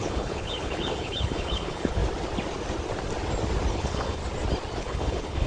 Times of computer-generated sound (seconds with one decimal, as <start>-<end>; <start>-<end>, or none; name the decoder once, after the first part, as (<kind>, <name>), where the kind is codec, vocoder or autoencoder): 0.0-2.0 (codec, HILCodec); 3.7-4.2; 4.8-5.5